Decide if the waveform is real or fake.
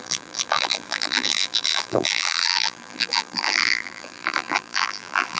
fake